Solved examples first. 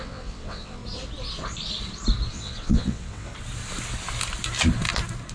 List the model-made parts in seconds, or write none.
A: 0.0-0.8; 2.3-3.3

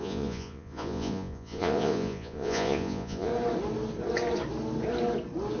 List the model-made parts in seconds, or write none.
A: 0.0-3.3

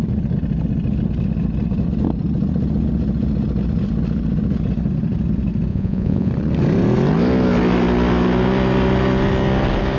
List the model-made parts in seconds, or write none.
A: 5.7-6.3